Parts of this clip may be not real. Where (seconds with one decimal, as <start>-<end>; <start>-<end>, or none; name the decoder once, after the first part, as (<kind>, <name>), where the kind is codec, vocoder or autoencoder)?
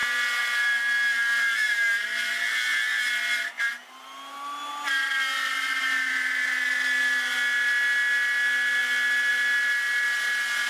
none